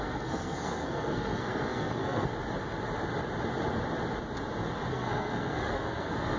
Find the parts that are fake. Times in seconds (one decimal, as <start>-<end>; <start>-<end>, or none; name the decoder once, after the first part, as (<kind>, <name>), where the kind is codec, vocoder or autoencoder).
0.0-2.3 (codec, SNAC); 4.9-6.4